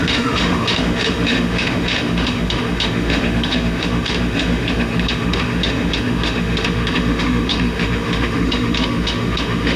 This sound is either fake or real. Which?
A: fake